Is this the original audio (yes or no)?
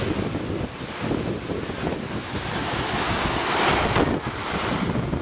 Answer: yes